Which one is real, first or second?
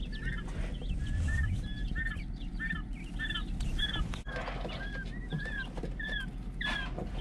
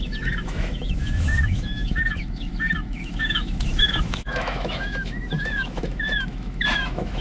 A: first